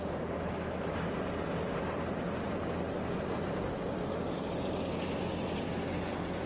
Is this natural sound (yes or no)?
yes